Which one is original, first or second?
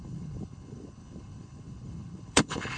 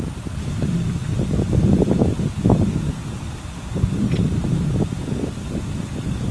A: second